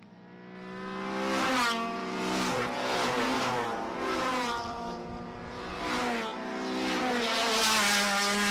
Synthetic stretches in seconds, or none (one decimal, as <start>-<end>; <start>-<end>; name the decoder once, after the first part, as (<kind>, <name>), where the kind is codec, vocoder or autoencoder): 2.0-5.8 (vocoder, Vocos)